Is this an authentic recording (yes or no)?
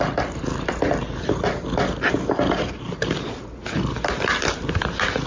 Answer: yes